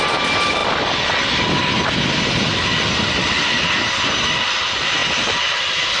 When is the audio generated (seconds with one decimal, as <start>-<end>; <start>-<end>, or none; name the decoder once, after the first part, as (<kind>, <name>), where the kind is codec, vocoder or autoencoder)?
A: none